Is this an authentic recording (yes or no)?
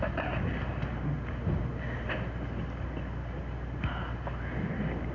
yes